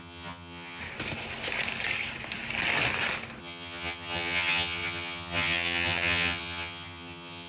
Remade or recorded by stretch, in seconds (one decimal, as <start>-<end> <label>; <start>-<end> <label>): 0.0-0.8 remade; 0.8-3.4 recorded; 3.4-7.5 remade